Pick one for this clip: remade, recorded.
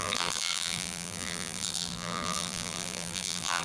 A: remade